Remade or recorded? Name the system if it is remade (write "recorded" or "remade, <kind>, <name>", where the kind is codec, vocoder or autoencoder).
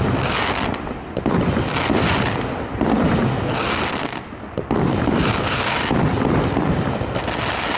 recorded